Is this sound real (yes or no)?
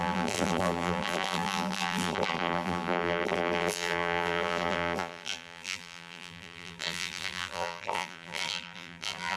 no